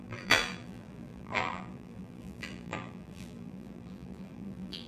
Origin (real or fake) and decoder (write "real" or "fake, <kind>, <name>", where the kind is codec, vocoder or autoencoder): fake, vocoder, BigVGAN v2